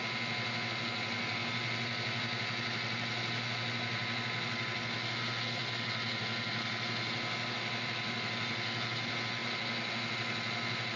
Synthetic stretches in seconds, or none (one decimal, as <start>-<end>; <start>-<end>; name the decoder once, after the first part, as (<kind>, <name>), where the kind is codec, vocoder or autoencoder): none